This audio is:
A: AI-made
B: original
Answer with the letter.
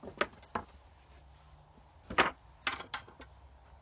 B